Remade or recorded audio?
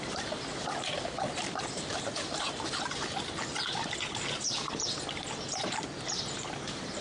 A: remade